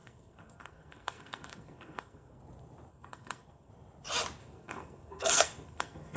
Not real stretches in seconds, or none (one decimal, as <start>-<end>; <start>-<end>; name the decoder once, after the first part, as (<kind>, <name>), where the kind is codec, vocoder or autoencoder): 0.0-2.4 (codec, SNAC); 2.9-3.7; 4.4-6.2